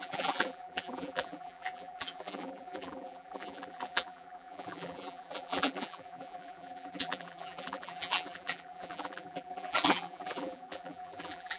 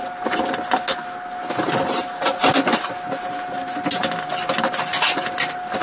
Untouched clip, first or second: second